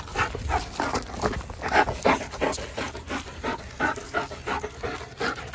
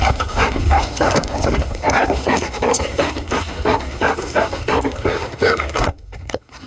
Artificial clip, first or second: second